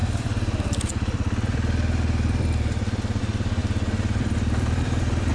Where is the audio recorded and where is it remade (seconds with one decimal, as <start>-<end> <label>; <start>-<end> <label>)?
0.0-3.2 remade; 3.2-3.6 recorded; 3.6-5.3 remade